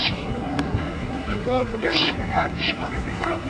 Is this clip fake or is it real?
fake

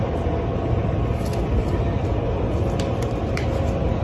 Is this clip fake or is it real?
real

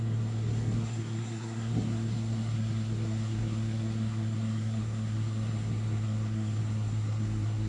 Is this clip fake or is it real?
fake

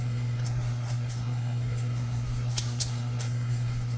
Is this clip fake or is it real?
fake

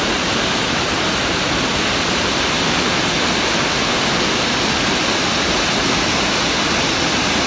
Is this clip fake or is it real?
real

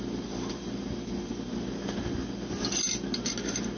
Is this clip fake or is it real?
real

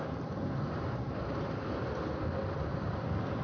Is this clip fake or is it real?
real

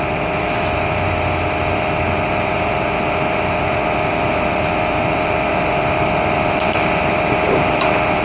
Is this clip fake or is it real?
fake